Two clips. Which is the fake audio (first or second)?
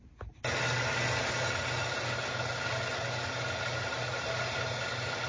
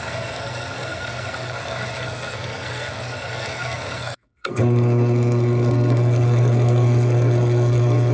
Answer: second